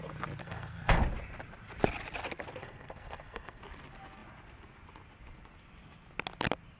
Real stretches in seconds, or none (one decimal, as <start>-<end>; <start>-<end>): 0.0-0.4; 1.0-2.6; 3.6-6.8